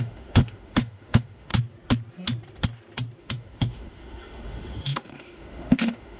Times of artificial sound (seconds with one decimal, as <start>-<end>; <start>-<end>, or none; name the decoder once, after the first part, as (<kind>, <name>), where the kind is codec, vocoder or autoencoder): 0.0-1.5 (autoencoder, DAC-VAE); 3.2-6.2

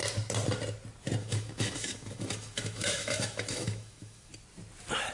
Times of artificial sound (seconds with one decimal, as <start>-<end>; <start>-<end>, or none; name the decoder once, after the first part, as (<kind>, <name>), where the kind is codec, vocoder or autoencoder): 1.2-4.3 (autoencoder, DAC-VAE)

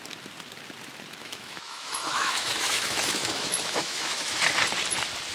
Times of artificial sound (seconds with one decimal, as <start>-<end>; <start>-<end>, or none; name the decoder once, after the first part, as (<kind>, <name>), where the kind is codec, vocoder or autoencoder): 1.2-4.4 (autoencoder, DAC-VAE)

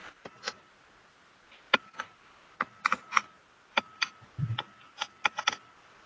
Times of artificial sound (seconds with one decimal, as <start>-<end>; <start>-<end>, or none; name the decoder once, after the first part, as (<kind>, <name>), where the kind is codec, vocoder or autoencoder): none

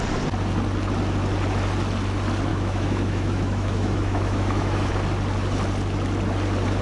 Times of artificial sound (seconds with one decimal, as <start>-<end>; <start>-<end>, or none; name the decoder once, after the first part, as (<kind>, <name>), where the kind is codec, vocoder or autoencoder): 2.5-4.9 (autoencoder, DAC-VAE)

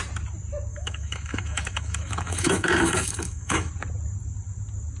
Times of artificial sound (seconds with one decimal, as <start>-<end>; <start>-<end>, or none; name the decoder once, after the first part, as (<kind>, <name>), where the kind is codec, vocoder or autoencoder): 0.7-3.7 (autoencoder, DAC-VAE)